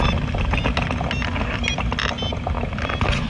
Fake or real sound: real